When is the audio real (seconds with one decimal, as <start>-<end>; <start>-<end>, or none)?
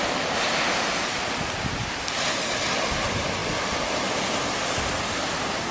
0.0-5.7